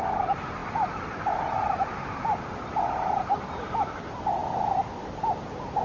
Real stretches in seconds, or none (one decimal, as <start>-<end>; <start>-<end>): 0.0-5.8